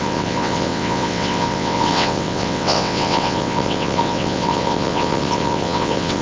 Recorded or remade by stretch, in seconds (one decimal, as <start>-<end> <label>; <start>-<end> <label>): 0.0-6.2 remade